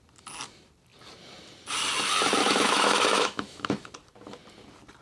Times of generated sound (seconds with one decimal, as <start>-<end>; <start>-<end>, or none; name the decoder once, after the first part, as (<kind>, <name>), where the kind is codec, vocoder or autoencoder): 2.4-3.9 (autoencoder, DAC-VAE)